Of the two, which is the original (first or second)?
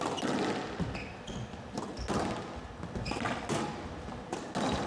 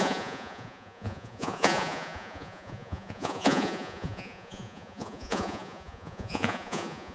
first